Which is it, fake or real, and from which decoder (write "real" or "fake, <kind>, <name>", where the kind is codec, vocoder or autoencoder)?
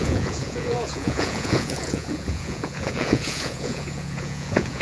fake, vocoder, Vocos